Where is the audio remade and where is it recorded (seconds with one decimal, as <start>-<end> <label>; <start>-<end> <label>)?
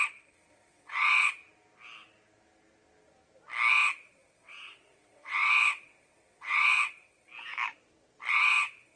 0.0-1.4 remade; 1.4-3.7 recorded; 3.7-7.3 remade; 7.3-8.3 recorded; 8.3-9.0 remade